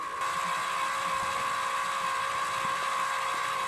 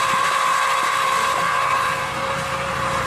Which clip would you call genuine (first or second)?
first